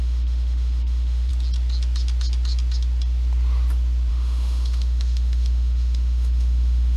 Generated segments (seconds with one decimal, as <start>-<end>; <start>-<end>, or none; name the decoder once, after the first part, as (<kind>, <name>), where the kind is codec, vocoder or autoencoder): 0.0-1.3 (autoencoder, DAC-VAE); 4.1-7.0